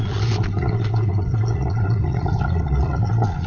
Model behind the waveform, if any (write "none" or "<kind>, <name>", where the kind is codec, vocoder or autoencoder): vocoder, Vocos